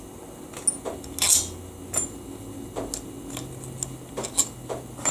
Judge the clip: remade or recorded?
recorded